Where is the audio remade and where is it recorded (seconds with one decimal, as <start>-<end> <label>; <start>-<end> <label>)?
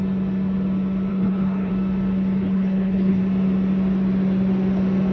0.0-1.1 recorded; 1.1-1.7 remade; 1.7-2.4 recorded; 2.4-3.2 remade; 3.2-5.1 recorded